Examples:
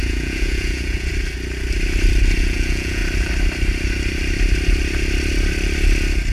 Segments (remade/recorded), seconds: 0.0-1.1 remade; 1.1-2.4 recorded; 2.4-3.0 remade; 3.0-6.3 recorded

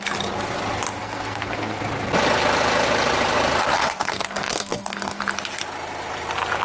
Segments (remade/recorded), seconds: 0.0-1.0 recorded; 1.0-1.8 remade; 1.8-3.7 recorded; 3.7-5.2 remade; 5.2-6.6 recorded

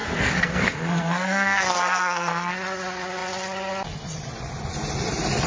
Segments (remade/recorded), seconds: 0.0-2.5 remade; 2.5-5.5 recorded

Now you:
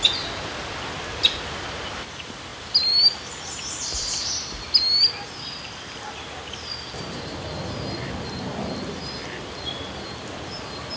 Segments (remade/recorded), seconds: 0.0-2.5 recorded; 2.5-4.8 remade; 4.8-11.0 recorded

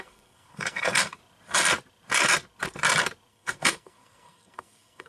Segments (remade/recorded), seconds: 0.0-1.2 remade; 1.2-3.3 recorded; 3.3-5.1 remade

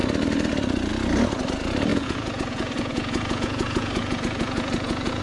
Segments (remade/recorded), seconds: 0.0-1.9 recorded; 1.9-5.2 remade